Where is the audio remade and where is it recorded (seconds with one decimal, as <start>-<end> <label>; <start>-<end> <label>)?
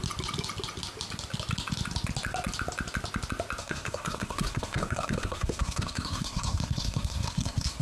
0.0-3.6 recorded; 3.6-7.8 remade